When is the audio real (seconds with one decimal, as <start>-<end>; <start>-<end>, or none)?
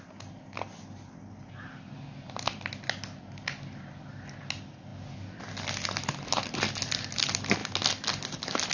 0.0-8.7